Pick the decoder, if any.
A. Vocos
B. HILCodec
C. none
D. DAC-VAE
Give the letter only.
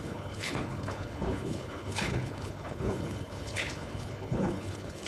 B